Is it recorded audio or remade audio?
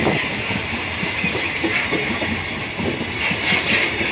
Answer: recorded